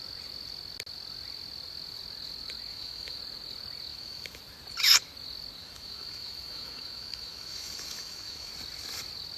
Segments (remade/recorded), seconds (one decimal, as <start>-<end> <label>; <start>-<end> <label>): 0.0-2.7 recorded; 2.7-3.2 remade; 3.2-3.9 recorded; 3.9-4.4 remade; 4.4-5.6 recorded; 5.6-8.5 remade; 8.5-9.4 recorded